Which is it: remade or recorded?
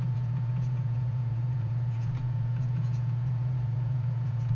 remade